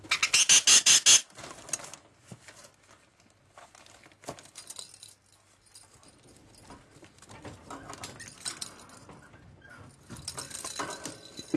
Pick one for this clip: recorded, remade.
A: recorded